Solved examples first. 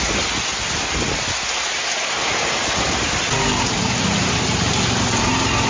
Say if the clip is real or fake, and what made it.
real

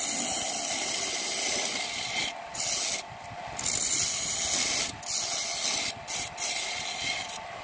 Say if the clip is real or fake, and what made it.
real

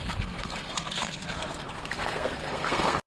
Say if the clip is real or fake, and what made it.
fake, codec, SNAC